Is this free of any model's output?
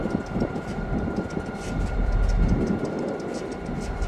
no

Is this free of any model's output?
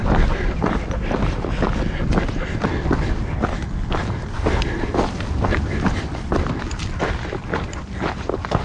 yes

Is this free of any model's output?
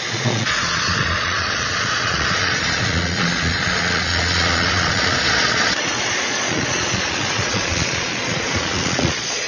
no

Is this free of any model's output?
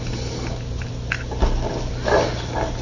yes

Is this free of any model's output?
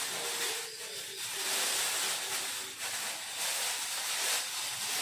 yes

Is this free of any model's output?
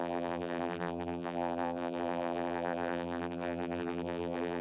no